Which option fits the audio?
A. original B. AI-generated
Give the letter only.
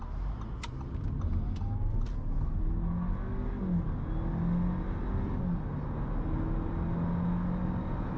A